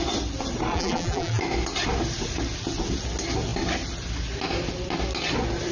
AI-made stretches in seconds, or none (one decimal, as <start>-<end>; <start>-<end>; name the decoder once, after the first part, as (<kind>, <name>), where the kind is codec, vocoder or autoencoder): 0.7-1.4 (vocoder, BigVGAN v2)